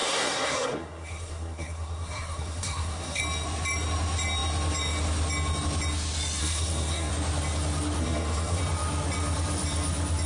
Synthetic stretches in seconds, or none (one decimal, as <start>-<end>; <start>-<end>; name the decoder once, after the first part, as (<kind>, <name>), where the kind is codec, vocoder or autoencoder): 0.0-3.2 (codec, SNAC); 6.4-7.1; 8.0-8.6